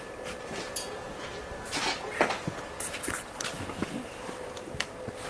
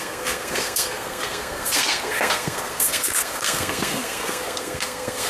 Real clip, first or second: first